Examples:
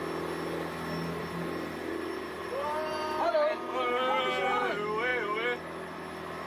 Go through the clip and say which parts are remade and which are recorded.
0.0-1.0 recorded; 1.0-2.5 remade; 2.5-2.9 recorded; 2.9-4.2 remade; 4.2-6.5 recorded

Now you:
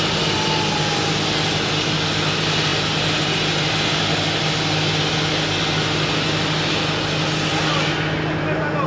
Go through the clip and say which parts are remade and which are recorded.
0.0-8.9 recorded

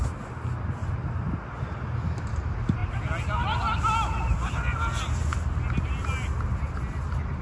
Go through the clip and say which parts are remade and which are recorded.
0.0-7.4 recorded

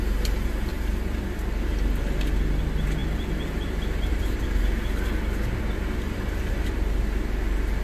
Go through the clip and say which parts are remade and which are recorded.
0.0-7.8 recorded

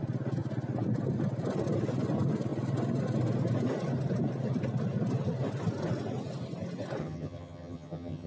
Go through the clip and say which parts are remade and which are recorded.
0.0-7.0 recorded; 7.0-8.3 remade

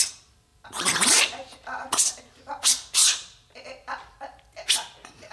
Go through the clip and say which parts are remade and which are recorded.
0.0-5.3 recorded

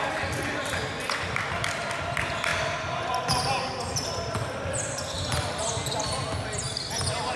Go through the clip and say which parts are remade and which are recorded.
0.0-7.4 recorded

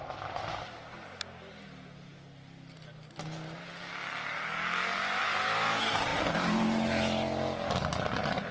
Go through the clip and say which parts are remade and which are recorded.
0.0-8.5 recorded